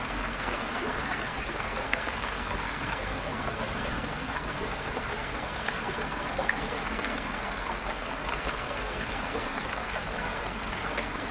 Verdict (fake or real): fake